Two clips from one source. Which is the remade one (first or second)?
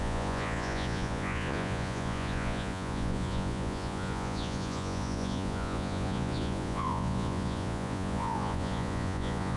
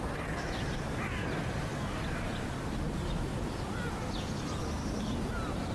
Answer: first